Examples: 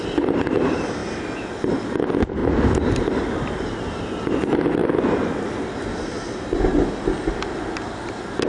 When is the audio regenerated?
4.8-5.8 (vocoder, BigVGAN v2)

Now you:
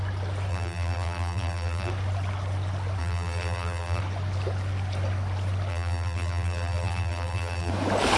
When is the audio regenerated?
0.5-1.9 (vocoder, BigVGAN v2); 3.0-4.0; 5.7-7.7

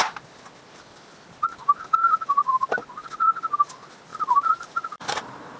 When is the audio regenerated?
2.0-2.7 (vocoder, BigVGAN v2); 4.1-5.6

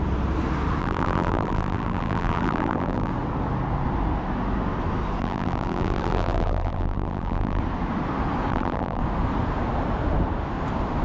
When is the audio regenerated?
0.8-3.1 (vocoder, BigVGAN v2); 5.2-7.6; 8.5-9.0

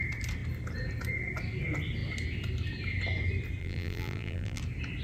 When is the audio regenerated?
3.6-4.6 (vocoder, BigVGAN v2)

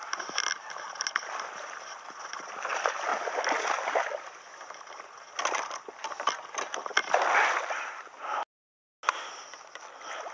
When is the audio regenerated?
none

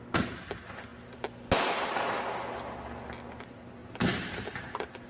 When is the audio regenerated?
3.8-5.1 (vocoder, BigVGAN v2)